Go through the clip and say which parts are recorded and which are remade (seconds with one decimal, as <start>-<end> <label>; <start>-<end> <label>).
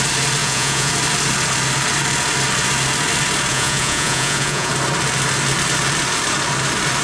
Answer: 0.0-0.4 recorded; 0.4-0.9 remade; 0.9-3.5 recorded; 3.5-4.7 remade; 4.7-7.0 recorded